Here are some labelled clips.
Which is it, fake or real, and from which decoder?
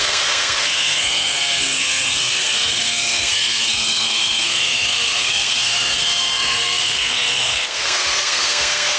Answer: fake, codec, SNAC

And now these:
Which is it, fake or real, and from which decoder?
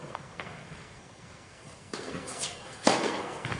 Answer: fake, codec, SNAC